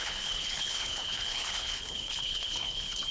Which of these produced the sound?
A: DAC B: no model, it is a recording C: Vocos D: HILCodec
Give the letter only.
D